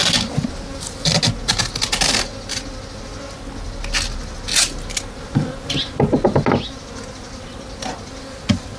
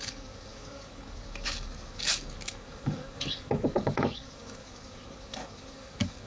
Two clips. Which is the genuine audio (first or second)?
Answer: first